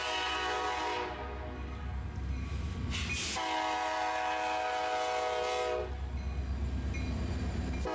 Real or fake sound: real